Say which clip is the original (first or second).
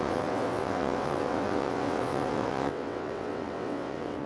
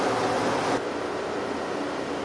second